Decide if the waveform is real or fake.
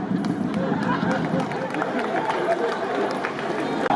real